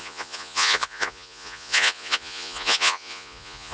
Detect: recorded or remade remade